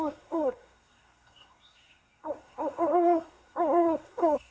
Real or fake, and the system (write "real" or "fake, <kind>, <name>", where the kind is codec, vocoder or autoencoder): fake, codec, SNAC